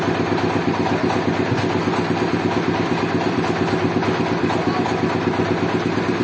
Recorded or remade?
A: recorded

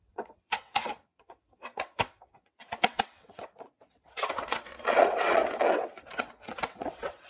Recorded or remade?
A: remade